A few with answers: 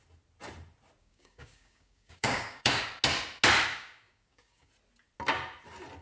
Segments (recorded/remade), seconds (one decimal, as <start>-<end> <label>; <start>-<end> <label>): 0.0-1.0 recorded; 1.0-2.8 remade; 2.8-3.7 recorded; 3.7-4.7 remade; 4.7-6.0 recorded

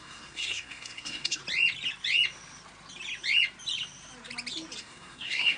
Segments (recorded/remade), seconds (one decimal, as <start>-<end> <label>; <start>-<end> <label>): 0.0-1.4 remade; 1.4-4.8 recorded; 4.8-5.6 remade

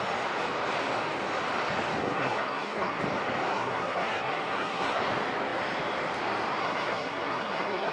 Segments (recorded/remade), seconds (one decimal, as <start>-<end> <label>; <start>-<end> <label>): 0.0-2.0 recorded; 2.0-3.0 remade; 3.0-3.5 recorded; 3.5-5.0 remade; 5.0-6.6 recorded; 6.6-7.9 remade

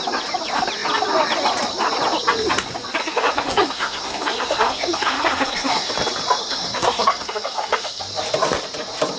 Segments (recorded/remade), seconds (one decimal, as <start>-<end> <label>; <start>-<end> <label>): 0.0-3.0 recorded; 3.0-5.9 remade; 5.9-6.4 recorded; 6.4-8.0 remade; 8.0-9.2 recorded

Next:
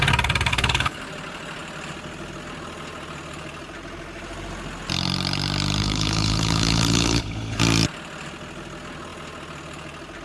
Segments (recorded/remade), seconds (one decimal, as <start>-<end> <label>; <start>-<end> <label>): 0.0-0.5 recorded; 0.5-1.0 remade; 1.0-5.8 recorded; 5.8-7.6 remade; 7.6-10.2 recorded

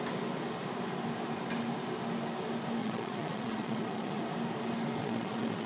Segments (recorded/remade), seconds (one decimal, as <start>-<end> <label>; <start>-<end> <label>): 0.0-2.8 recorded; 2.8-4.2 remade; 4.2-5.0 recorded; 5.0-5.7 remade